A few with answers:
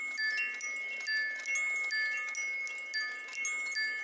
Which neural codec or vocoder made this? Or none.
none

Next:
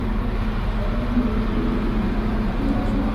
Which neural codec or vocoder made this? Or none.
none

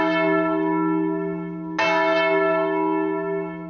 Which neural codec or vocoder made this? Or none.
none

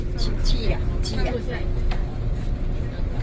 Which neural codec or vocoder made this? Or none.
none